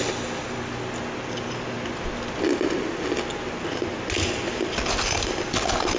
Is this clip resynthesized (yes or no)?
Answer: no